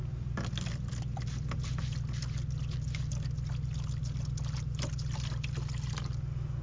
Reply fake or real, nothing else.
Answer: real